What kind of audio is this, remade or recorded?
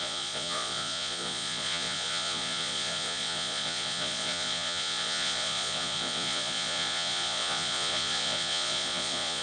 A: remade